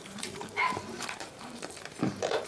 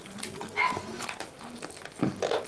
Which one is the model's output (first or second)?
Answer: first